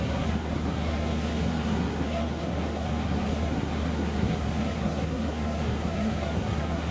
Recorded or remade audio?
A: remade